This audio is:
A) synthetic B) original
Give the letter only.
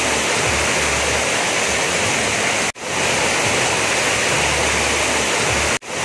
B